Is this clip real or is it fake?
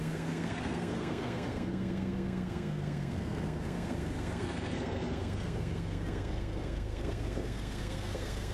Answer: fake